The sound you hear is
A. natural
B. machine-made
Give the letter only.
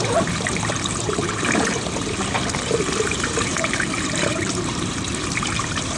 B